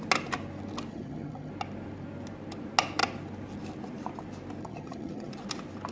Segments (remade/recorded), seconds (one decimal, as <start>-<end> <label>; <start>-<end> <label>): 0.0-0.9 recorded; 0.9-1.5 remade; 1.5-4.6 recorded; 4.6-5.3 remade; 5.3-5.9 recorded